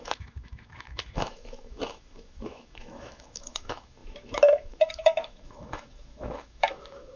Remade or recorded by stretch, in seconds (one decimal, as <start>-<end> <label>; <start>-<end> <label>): 0.0-7.2 remade